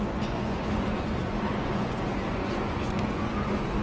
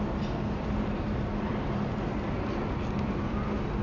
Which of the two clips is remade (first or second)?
first